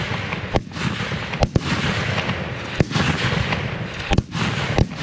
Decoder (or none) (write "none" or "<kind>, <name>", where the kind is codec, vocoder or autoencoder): none